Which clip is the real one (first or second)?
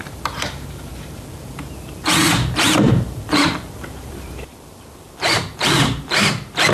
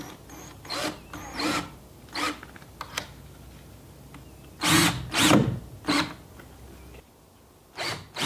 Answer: second